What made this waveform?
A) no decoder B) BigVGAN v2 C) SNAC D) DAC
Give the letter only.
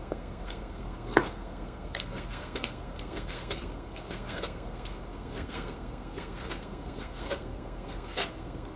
C